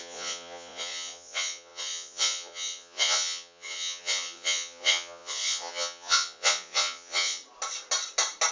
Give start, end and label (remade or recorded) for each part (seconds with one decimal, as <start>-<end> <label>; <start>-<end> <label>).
0.0-7.4 remade; 7.4-8.5 recorded